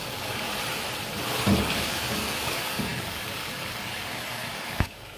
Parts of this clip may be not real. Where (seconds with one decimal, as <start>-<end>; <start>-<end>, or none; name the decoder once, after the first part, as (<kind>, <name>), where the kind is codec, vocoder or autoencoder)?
0.0-0.5 (codec, DAC); 1.6-5.2